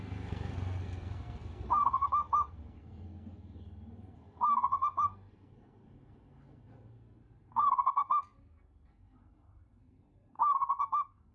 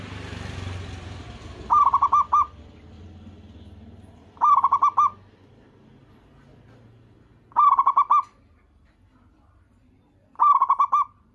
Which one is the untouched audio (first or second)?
second